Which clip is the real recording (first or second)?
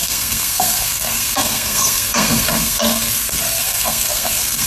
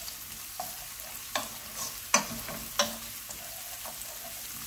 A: second